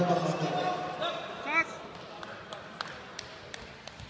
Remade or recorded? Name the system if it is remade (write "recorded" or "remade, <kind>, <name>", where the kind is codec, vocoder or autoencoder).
recorded